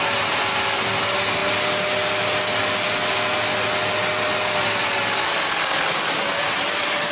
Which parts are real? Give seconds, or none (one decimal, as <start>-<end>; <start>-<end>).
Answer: 0.0-7.1